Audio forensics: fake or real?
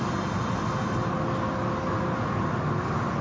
real